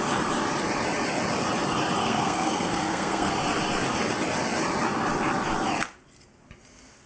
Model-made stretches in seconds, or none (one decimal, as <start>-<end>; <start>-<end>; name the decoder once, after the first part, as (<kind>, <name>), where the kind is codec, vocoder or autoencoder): 2.0-3.3 (codec, SNAC)